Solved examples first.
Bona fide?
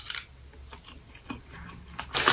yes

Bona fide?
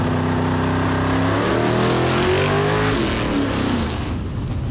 yes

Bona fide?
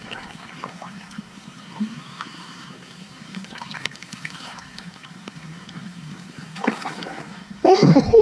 no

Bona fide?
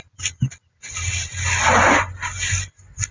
yes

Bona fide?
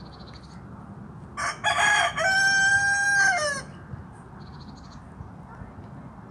yes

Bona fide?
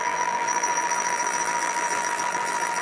no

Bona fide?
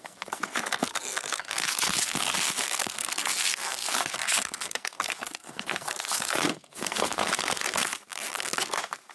no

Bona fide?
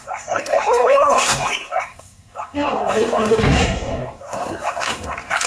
no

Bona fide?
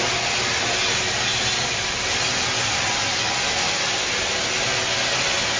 yes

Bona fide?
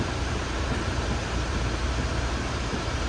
no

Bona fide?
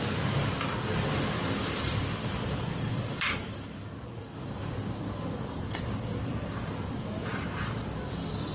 no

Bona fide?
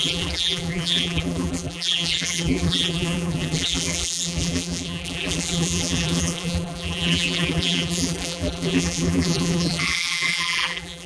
no